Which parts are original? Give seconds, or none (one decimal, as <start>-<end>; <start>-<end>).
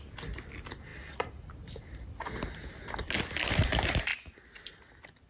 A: 0.0-5.3